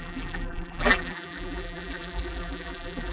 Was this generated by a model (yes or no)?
yes